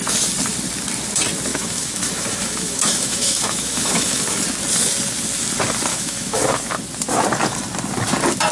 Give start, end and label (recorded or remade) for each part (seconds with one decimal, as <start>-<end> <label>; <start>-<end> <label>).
0.0-1.5 recorded; 1.5-4.4 remade; 4.4-5.9 recorded; 5.9-6.4 remade; 6.4-8.5 recorded